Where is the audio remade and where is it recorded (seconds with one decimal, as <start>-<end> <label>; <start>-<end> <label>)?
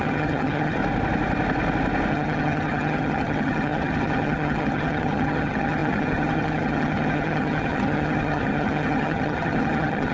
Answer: 0.0-0.8 remade; 0.8-2.1 recorded; 2.1-10.1 remade